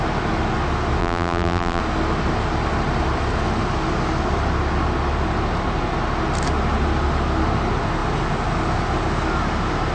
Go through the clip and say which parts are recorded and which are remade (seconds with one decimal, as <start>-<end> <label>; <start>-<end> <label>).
0.0-1.0 recorded; 1.0-1.8 remade; 1.8-9.9 recorded